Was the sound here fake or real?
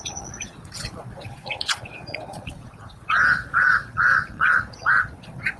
fake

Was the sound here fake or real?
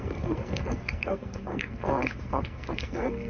fake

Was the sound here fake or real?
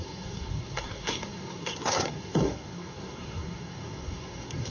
fake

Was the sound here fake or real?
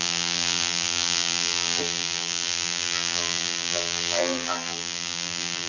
fake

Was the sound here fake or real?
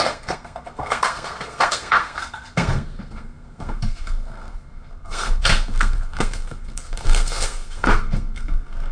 fake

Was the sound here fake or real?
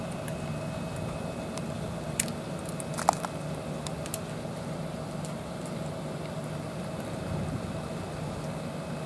real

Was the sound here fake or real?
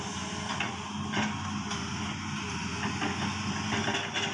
real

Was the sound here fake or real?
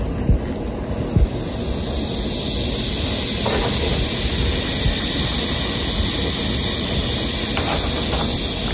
real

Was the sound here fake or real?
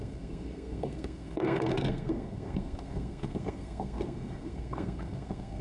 fake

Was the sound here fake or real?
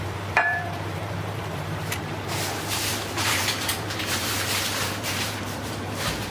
fake